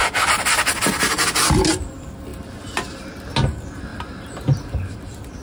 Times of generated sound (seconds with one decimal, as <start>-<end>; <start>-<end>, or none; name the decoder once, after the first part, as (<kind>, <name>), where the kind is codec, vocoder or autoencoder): none